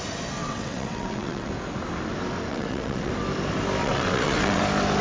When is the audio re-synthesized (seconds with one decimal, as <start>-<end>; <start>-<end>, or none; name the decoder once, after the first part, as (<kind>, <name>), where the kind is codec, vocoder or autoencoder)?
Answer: 0.4-1.5 (vocoder, WaveNeXt); 2.5-3.1; 3.8-4.6